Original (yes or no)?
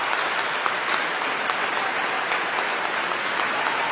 yes